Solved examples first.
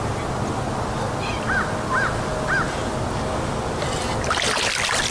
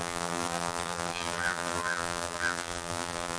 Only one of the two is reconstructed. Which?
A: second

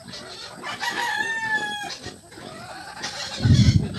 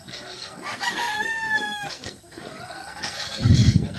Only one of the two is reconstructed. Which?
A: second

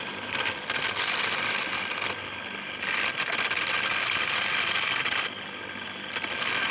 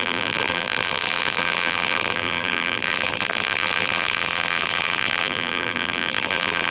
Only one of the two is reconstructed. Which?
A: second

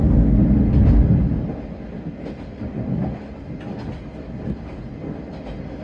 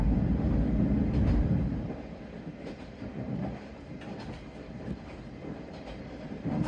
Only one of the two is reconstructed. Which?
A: second